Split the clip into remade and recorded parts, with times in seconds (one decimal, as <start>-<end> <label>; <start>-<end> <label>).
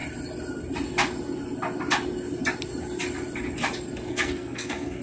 0.0-4.1 recorded; 4.1-5.0 remade